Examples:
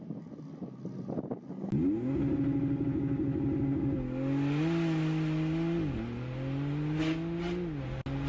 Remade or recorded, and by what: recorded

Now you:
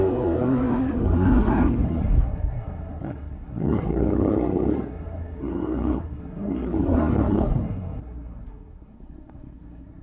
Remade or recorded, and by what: remade, codec, SNAC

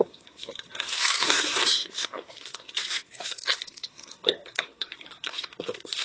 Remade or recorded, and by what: remade, codec, SNAC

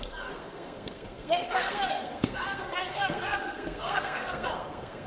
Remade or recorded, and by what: remade, codec, SNAC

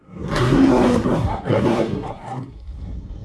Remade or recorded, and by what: remade, codec, SNAC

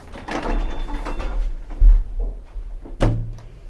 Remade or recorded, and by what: recorded